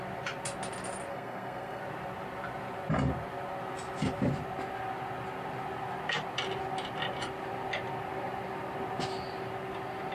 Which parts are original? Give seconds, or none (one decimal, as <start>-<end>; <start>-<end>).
0.0-1.1; 1.8-10.1